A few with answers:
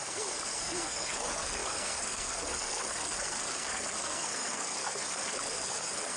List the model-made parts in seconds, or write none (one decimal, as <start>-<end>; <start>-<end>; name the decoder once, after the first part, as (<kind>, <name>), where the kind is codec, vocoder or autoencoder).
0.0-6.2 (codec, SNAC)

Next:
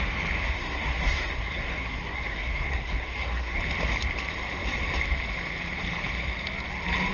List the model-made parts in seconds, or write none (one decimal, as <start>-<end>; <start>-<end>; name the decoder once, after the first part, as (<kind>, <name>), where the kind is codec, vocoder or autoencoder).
0.4-3.6 (codec, SNAC)

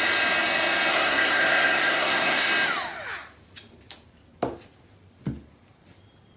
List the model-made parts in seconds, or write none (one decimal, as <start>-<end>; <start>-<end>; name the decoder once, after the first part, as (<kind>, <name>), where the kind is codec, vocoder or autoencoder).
0.9-2.5 (codec, SNAC)